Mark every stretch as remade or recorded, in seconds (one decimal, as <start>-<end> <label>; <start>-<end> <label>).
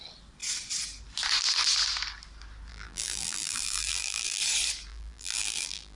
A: 0.0-2.7 recorded; 2.7-4.4 remade; 4.4-4.9 recorded; 4.9-6.0 remade